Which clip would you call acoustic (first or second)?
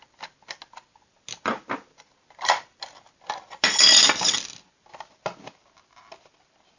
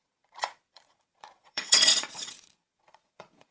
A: first